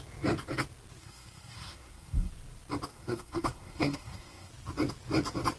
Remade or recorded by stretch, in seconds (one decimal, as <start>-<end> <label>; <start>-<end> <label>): 0.0-1.0 recorded; 1.0-2.3 remade; 2.3-2.9 recorded; 2.9-4.5 remade; 4.5-5.6 recorded